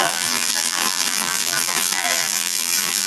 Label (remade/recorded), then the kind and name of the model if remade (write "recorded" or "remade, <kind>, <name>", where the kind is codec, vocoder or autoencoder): remade, vocoder, BigVGAN v2